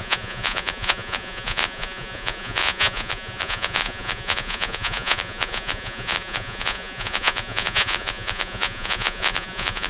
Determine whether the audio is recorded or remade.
remade